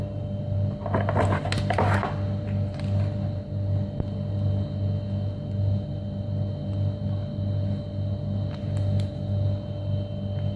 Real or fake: real